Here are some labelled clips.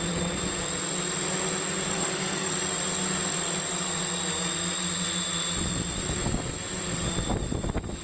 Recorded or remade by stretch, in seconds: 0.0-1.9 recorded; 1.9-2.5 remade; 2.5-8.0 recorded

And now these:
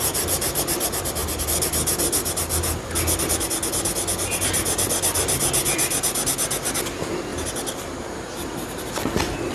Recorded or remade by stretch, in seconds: 0.0-9.5 recorded

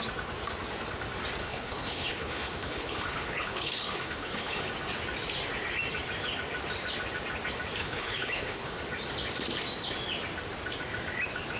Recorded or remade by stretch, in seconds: 0.0-1.4 recorded; 1.4-4.7 remade; 4.7-7.8 recorded; 7.8-8.8 remade; 8.8-11.6 recorded

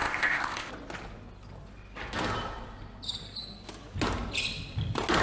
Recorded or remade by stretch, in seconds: 0.0-0.7 remade; 0.7-5.2 recorded

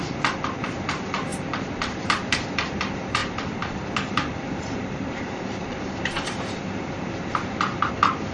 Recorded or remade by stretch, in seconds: 0.0-1.3 recorded; 1.3-2.0 remade; 2.0-3.2 recorded; 3.2-7.9 remade; 7.9-8.3 recorded

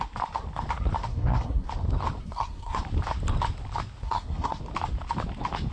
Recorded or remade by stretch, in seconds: 0.0-1.1 recorded; 1.1-1.7 remade; 1.7-2.2 recorded; 2.2-2.8 remade; 2.8-4.0 recorded; 4.0-4.6 remade; 4.6-5.7 recorded

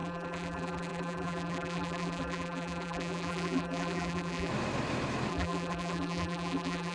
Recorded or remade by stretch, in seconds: 0.0-4.5 remade; 4.5-5.3 recorded; 5.3-6.9 remade